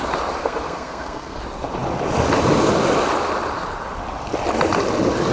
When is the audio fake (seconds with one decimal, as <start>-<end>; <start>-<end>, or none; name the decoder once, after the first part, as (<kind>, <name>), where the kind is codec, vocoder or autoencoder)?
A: 0.4-1.4 (codec, SNAC)